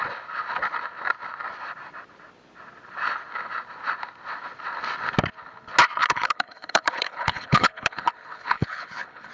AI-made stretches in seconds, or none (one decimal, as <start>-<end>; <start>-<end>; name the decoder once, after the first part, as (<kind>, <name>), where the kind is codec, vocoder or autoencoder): 6.0-9.3 (codec, HILCodec)